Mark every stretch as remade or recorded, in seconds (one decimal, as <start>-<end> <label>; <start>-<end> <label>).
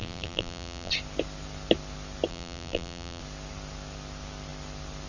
0.0-0.9 remade; 0.9-2.3 recorded; 2.3-3.2 remade; 3.2-5.1 recorded